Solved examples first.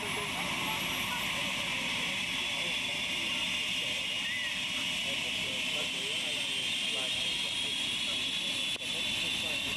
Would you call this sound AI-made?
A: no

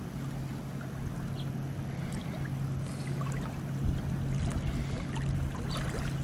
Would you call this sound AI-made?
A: no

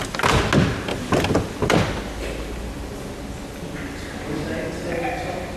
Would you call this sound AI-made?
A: no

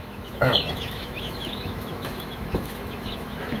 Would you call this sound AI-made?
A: yes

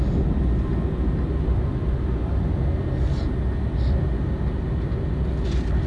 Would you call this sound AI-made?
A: no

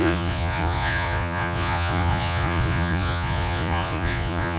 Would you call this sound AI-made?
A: yes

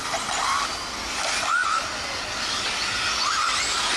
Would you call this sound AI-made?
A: no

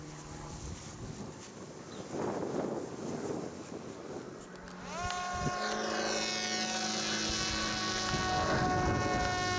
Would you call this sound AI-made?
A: no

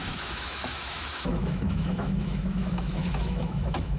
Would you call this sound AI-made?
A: yes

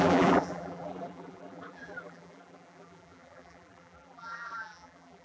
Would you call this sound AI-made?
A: yes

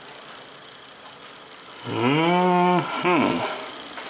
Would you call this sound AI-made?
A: no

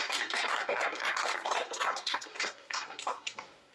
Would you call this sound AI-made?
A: yes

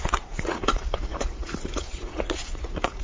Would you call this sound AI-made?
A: yes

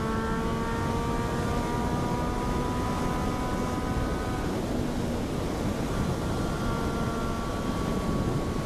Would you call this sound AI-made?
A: no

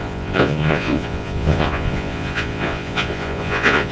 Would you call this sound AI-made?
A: yes